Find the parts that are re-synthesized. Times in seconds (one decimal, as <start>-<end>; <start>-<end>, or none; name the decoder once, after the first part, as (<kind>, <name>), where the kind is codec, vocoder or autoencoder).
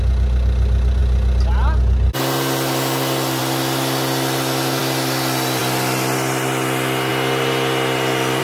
none